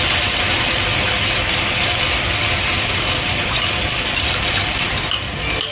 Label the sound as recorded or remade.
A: recorded